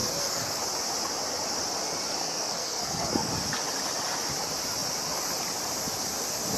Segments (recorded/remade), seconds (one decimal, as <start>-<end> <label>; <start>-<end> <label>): 0.0-0.6 remade; 0.6-2.2 recorded; 2.2-3.3 remade; 3.3-6.6 recorded